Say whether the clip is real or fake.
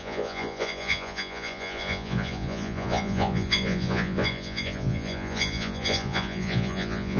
fake